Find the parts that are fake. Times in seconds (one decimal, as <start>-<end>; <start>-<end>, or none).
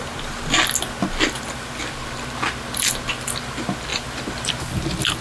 3.9-4.5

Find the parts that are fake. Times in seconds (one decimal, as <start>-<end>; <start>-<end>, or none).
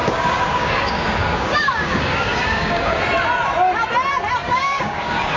0.0-3.0; 4.4-5.4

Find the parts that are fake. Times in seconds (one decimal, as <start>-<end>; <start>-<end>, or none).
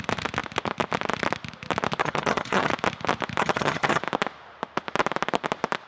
2.0-2.7; 3.4-4.0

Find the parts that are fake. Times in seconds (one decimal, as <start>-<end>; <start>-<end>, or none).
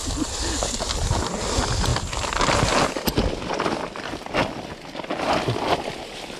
none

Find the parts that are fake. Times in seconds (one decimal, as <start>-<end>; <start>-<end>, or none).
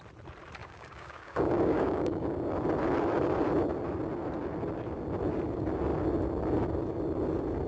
0.6-2.4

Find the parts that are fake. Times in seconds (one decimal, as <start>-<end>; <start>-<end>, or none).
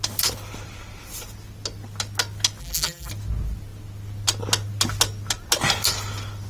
2.6-3.1